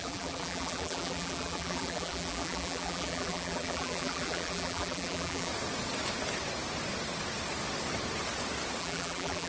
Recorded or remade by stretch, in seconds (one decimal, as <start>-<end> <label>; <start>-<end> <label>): 0.0-5.5 remade; 5.5-8.8 recorded; 8.8-9.5 remade